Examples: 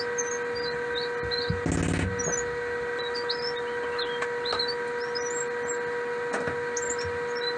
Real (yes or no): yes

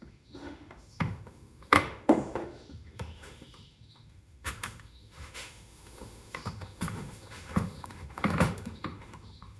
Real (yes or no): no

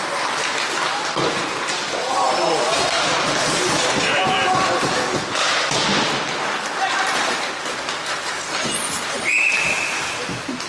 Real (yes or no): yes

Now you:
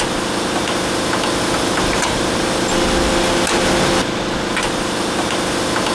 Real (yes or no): yes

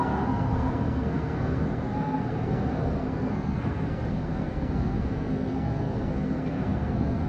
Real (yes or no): no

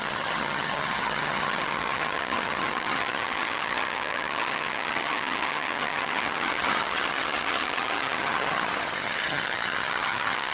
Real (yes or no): no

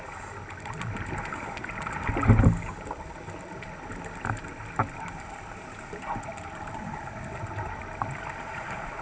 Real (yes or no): yes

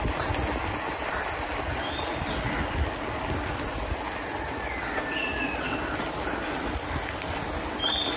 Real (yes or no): yes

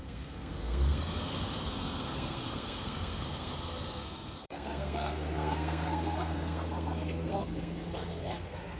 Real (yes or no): no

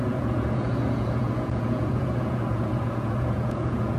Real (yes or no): no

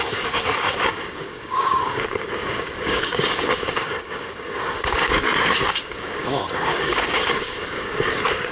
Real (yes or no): no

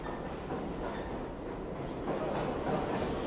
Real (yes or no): yes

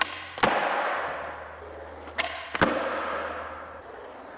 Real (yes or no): yes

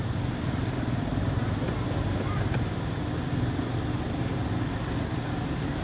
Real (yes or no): yes